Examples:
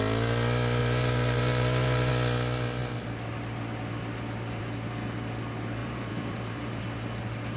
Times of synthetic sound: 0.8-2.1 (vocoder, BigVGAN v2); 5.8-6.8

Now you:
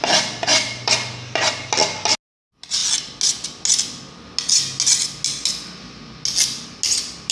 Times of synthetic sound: 0.5-1.5 (vocoder, BigVGAN v2)

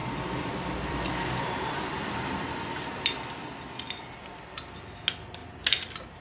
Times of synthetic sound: 0.0-3.7 (vocoder, BigVGAN v2)

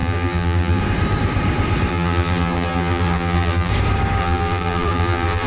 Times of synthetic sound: 0.0-0.8 (vocoder, BigVGAN v2); 1.9-3.7; 4.2-5.5

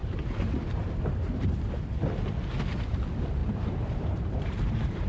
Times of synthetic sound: 0.0-0.9 (vocoder, BigVGAN v2); 3.4-5.1

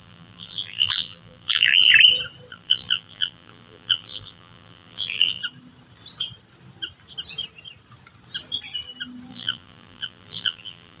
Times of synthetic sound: 0.0-1.9 (vocoder, BigVGAN v2); 2.5-5.4; 9.3-11.0